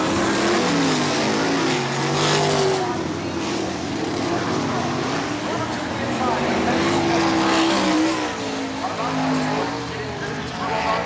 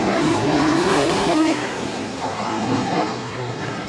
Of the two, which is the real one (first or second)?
first